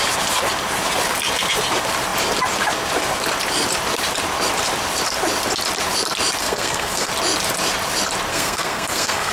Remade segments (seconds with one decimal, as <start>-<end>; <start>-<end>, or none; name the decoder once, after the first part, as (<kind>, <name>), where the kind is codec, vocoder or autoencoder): 6.4-7.1 (codec, SNAC); 8.3-9.3